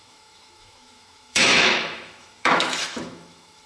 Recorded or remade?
remade